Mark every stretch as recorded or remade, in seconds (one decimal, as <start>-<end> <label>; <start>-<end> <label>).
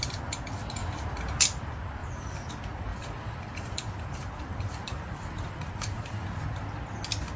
0.0-2.0 recorded; 2.0-2.5 remade; 2.5-2.9 recorded; 2.9-6.4 remade; 6.4-7.4 recorded